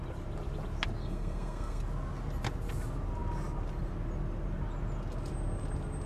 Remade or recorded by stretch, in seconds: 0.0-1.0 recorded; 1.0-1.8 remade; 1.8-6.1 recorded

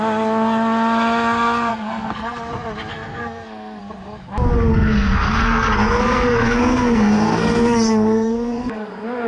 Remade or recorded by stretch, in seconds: 0.0-1.7 recorded; 1.7-2.5 remade; 2.5-2.9 recorded; 2.9-3.8 remade; 3.8-4.7 recorded; 4.7-8.9 remade; 8.9-9.3 recorded